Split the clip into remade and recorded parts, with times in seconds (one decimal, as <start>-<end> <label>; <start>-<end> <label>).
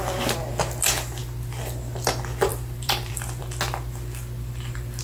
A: 0.0-2.5 recorded; 2.5-3.4 remade; 3.4-5.0 recorded